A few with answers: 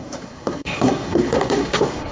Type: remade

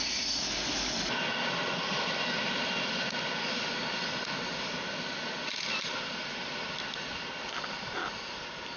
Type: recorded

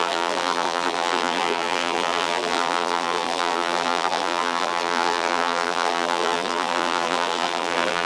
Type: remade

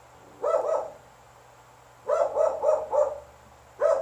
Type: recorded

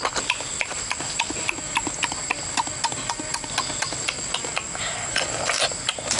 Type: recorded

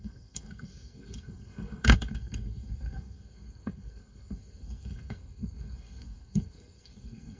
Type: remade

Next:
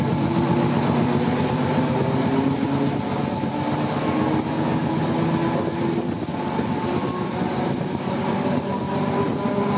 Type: recorded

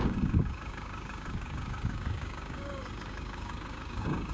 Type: remade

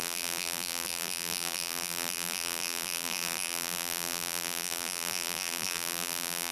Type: remade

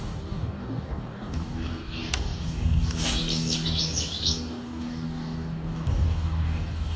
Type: remade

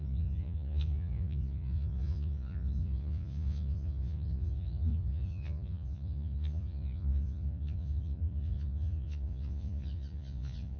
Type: remade